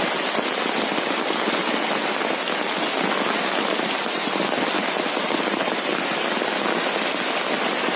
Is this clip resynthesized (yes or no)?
no